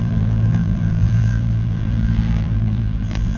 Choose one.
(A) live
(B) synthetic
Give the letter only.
B